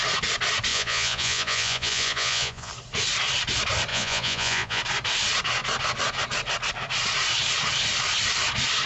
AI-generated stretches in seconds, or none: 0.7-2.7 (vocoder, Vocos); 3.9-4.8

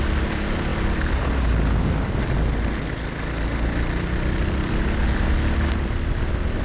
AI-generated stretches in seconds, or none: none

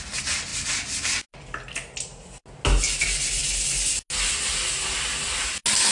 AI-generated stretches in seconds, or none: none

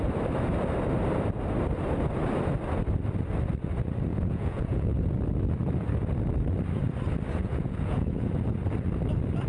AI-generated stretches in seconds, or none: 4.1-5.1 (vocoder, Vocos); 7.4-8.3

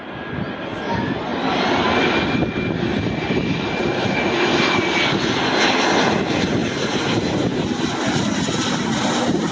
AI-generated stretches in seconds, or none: none

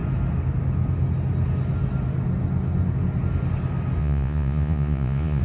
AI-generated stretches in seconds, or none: 4.0-5.4 (vocoder, Vocos)